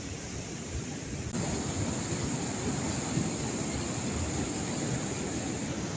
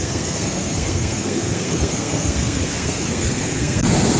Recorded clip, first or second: first